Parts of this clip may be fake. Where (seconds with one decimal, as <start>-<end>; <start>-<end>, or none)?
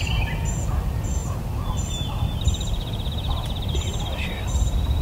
1.2-4.2